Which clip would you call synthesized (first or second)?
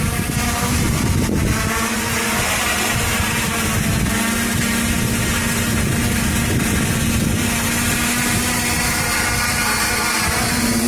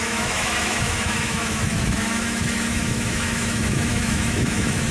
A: second